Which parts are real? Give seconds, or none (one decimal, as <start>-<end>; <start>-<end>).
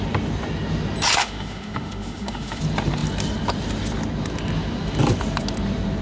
0.0-1.2; 2.6-6.0